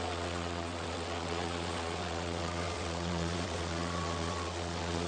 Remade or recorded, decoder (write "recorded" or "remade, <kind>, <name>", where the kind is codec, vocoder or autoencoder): remade, vocoder, WaveNeXt